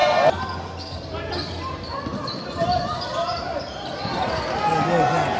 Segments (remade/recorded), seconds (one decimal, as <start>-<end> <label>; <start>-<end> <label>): 0.0-2.1 recorded; 2.1-4.3 remade; 4.3-5.4 recorded